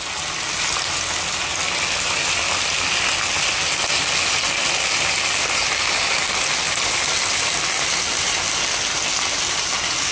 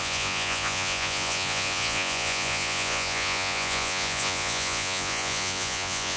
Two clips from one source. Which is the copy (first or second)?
second